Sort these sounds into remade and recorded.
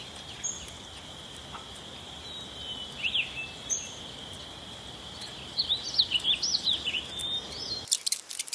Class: recorded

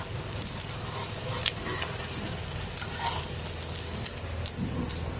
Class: recorded